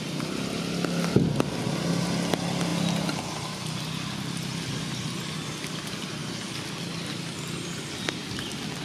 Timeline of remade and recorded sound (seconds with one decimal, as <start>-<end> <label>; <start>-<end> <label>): 0.0-8.8 recorded